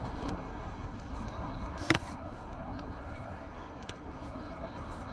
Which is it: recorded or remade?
remade